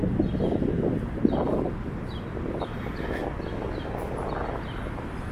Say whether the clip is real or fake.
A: real